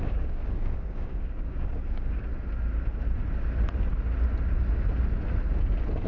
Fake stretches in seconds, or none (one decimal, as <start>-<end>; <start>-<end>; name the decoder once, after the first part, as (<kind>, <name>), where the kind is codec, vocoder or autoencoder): 0.0-2.3 (codec, DAC)